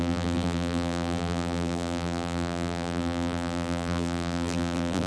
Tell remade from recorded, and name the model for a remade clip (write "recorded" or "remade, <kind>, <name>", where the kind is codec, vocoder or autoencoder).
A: remade, vocoder, BigVGAN v2